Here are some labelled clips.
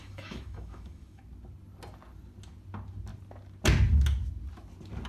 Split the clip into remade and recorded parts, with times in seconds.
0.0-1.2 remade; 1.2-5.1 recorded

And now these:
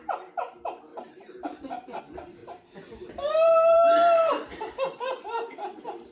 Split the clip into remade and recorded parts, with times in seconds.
0.0-0.9 recorded; 0.9-2.0 remade; 2.0-2.4 recorded; 2.4-6.1 remade

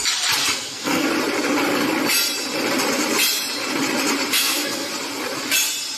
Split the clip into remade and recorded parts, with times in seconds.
0.0-0.4 recorded; 0.4-1.1 remade; 1.1-4.4 recorded; 4.4-4.9 remade; 4.9-6.0 recorded

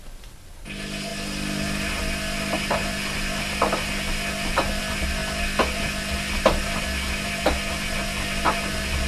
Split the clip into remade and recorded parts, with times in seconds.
0.0-2.8 recorded; 2.8-4.8 remade; 4.8-9.1 recorded

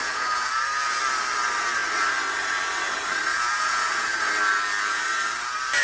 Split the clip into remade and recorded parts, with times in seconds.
0.0-1.0 remade; 1.0-3.3 recorded; 3.3-4.1 remade; 4.1-5.8 recorded

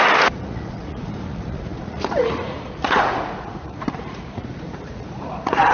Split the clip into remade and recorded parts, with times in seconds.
0.0-5.7 remade